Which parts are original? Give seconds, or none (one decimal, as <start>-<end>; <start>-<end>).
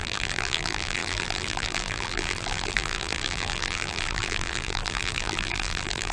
none